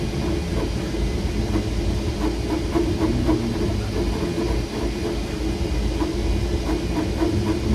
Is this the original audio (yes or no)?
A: yes